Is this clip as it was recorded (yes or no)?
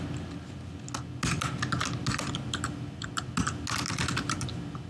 yes